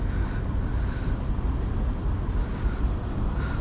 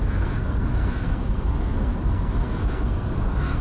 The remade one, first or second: second